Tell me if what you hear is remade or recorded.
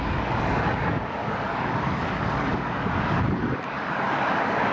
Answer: remade